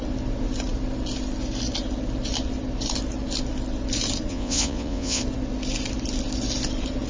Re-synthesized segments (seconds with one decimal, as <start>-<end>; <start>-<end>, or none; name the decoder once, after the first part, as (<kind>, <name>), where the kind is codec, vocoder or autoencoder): 4.3-5.2 (vocoder, Vocos)